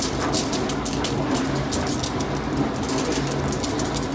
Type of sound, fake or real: real